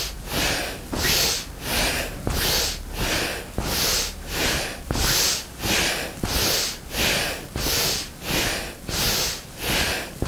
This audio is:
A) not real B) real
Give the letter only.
B